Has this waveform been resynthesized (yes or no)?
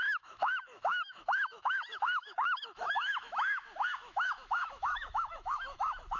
yes